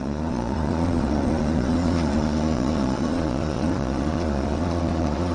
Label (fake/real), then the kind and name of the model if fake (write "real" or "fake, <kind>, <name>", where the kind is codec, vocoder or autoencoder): fake, vocoder, Vocos